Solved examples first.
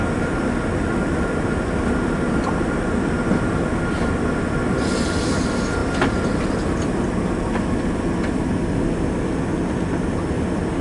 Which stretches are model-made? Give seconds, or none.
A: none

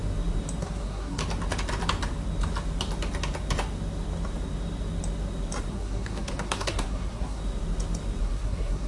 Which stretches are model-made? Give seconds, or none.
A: 0.6-1.2 (codec, SNAC); 5.7-7.4; 8.2-8.9

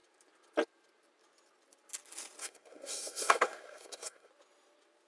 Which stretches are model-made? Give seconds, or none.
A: 2.4-4.3 (codec, SNAC)

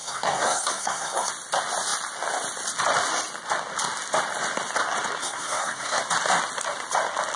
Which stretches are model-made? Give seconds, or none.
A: 0.0-1.3 (codec, SNAC); 5.2-6.0

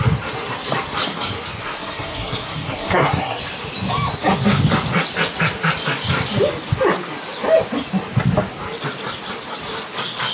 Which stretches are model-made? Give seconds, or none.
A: 1.6-3.4 (codec, SNAC)

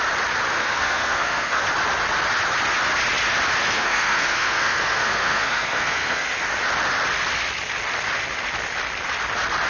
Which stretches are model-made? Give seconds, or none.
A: 0.6-1.6 (codec, SNAC); 3.6-6.3

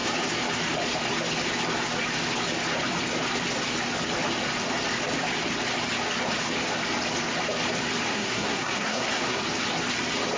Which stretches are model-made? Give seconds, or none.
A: 8.1-9.4 (codec, SNAC)

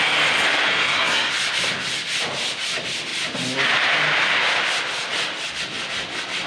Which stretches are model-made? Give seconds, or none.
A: 0.7-1.3 (codec, SNAC)